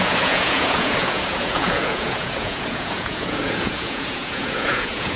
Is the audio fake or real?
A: fake